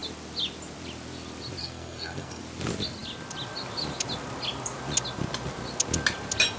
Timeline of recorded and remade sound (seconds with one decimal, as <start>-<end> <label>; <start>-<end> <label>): 0.0-1.6 recorded; 1.6-2.4 remade; 2.4-6.6 recorded